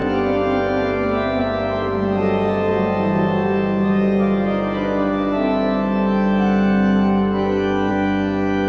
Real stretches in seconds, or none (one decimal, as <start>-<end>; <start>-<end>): 0.0-8.7